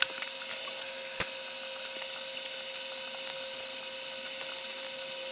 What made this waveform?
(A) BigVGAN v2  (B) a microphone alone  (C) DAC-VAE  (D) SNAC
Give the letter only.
B